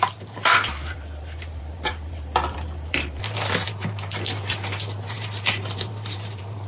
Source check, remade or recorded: remade